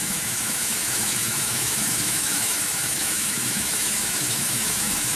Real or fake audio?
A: fake